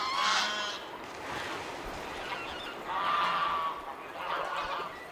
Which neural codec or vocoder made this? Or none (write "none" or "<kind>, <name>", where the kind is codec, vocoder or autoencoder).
none